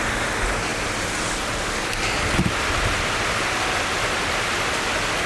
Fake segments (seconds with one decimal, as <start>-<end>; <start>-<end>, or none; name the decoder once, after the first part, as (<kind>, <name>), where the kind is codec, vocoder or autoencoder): none